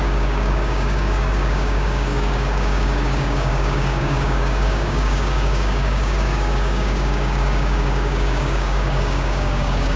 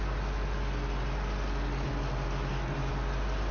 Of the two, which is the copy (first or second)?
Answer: first